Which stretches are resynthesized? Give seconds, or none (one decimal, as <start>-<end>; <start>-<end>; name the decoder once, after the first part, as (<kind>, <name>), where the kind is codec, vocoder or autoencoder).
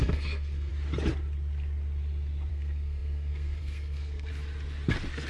0.0-0.7 (codec, SNAC); 2.5-4.3